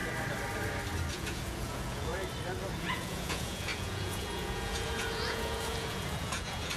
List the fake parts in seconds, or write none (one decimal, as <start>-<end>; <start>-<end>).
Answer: 1.1-2.1; 2.8-6.8